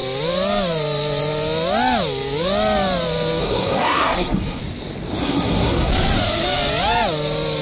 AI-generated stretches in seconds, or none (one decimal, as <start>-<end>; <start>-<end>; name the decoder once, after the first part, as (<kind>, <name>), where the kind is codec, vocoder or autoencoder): 3.4-4.6 (codec, SNAC); 5.2-5.9